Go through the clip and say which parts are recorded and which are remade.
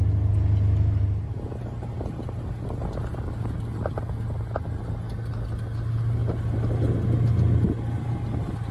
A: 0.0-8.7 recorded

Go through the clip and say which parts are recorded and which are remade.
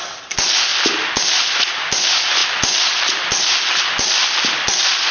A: 0.0-5.1 recorded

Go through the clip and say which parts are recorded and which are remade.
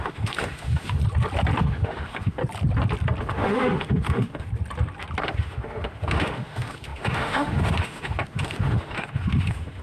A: 0.0-1.0 remade; 1.0-1.6 recorded; 1.6-2.4 remade; 2.4-3.2 recorded; 3.2-4.5 remade; 4.5-5.2 recorded; 5.2-9.8 remade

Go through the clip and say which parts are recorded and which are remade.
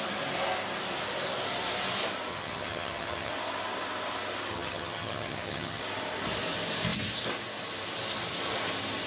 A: 0.0-2.3 recorded; 2.3-3.3 remade; 3.3-4.5 recorded; 4.5-5.8 remade; 5.8-9.1 recorded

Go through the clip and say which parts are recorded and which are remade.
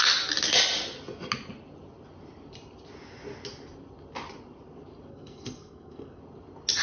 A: 0.0-5.1 recorded; 5.1-6.2 remade; 6.2-6.8 recorded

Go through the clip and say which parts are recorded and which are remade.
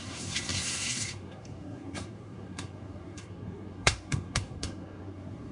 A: 0.0-5.5 remade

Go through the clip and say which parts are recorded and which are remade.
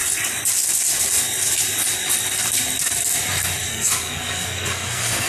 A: 0.0-3.7 recorded; 3.7-5.3 remade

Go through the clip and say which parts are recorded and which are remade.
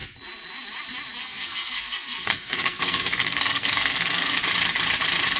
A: 0.0-1.2 recorded; 1.2-4.4 remade; 4.4-5.4 recorded